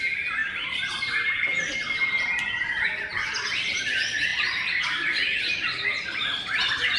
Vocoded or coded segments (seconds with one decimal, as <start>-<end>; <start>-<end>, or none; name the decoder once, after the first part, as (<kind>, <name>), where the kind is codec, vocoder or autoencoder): 0.0-7.0 (vocoder, BigVGAN v2)